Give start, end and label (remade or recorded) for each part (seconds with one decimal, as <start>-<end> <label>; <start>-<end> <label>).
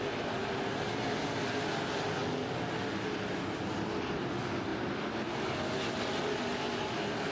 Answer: 0.0-7.3 recorded